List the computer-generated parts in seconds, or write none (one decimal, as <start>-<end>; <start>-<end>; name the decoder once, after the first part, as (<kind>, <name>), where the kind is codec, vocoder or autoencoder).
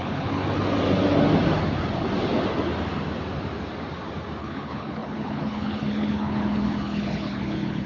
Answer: 0.0-0.4 (codec, HILCodec); 4.4-7.9